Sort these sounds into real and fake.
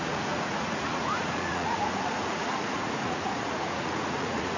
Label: fake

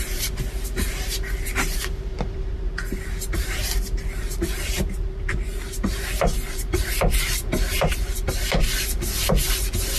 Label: fake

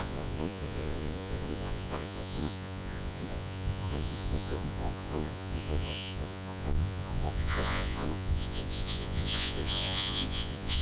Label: fake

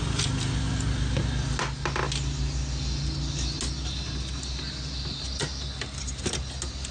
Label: real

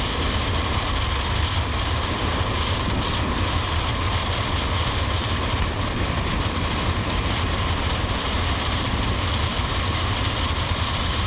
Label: real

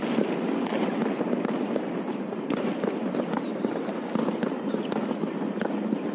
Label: real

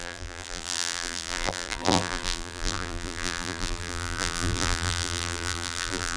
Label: fake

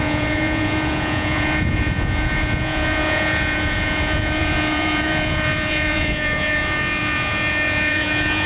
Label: fake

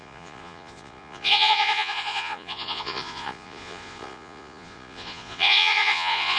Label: fake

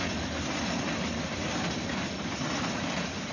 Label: real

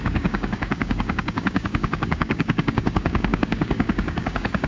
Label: fake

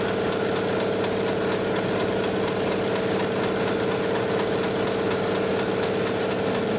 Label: real